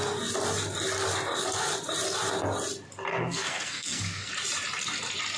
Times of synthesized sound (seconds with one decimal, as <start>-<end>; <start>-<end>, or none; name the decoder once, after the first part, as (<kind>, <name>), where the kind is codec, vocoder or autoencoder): 3.1-4.3 (codec, SNAC)